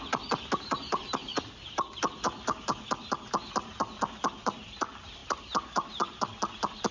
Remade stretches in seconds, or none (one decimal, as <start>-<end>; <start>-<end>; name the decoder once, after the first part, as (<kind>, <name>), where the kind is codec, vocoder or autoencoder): none